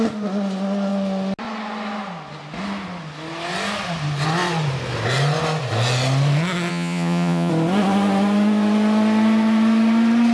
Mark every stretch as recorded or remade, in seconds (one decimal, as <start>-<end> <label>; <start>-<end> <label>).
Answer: 0.0-6.7 recorded; 6.7-7.5 remade; 7.5-10.3 recorded